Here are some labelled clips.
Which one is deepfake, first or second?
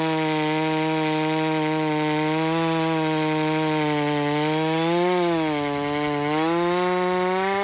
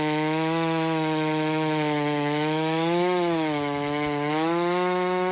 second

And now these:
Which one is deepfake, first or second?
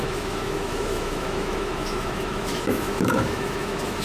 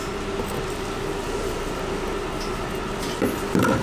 first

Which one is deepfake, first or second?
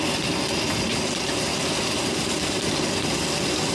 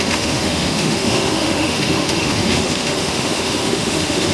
second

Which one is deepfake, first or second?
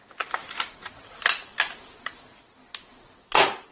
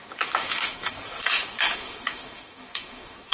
second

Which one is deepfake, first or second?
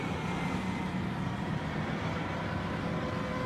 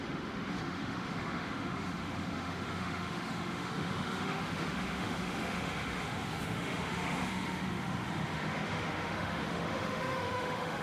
second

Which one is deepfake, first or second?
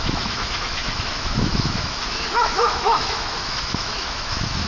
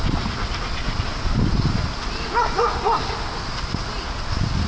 first